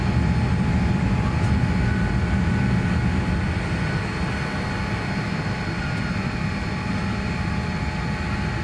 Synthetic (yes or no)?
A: no